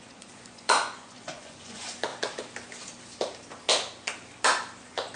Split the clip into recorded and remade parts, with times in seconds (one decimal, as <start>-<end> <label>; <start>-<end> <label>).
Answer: 0.0-2.1 remade; 2.1-4.8 recorded; 4.8-5.2 remade